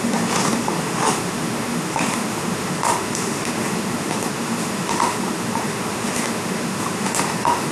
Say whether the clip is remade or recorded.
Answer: remade